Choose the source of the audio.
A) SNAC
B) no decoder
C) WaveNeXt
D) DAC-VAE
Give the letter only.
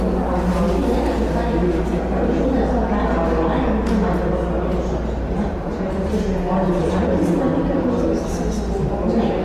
B